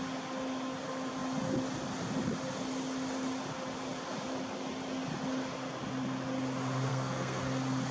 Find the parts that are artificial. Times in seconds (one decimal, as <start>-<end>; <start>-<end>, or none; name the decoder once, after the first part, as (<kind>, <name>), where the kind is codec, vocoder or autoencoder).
6.9-7.4 (codec, SNAC)

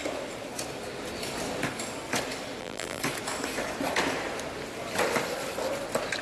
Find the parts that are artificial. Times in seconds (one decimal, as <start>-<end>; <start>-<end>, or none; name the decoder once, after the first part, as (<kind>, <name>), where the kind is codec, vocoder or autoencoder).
2.6-3.0 (vocoder, BigVGAN v2)